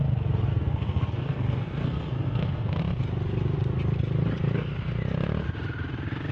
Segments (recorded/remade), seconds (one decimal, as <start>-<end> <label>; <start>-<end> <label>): 0.0-0.5 recorded; 0.5-2.8 remade; 2.8-6.3 recorded